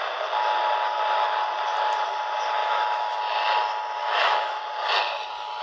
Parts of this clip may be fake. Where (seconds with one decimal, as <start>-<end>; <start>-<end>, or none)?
2.6-3.2; 4.0-4.6